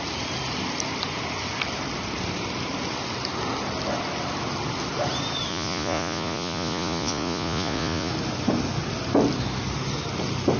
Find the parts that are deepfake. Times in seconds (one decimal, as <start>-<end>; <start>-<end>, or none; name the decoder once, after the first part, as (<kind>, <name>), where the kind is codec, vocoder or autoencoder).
5.5-8.1 (vocoder, Vocos)